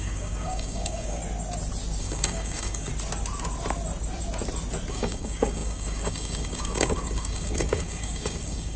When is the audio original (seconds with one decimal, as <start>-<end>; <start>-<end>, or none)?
1.2-2.0; 2.9-4.9

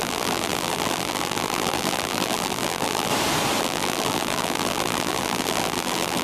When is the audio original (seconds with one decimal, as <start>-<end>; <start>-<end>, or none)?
3.1-3.6